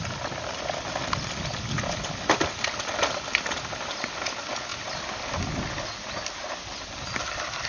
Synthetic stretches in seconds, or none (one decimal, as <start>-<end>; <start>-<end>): none

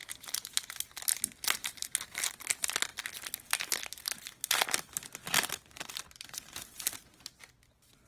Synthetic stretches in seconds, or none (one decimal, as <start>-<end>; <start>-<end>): none

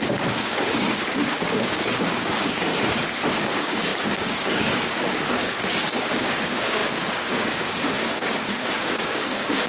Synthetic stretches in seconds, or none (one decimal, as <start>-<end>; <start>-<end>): 0.0-2.7; 3.3-9.7

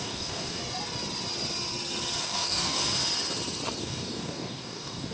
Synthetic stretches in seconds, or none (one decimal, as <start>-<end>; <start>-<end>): 0.0-0.6; 2.2-2.8; 3.8-5.1

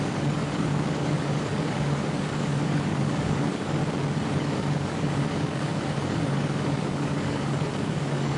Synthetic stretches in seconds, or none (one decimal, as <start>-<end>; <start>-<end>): 0.0-3.8; 4.3-8.4

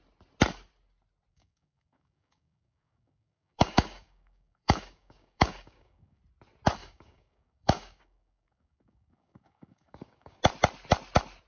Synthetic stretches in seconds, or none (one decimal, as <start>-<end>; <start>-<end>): 1.3-6.2; 6.8-10.4

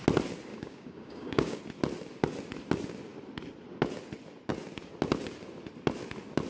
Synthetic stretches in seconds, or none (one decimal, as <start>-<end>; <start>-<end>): 0.5-1.6